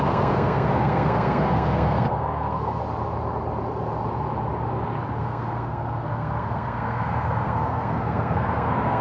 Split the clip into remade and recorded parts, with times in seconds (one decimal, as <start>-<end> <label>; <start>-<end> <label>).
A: 0.0-2.8 remade; 2.8-5.2 recorded; 5.2-9.0 remade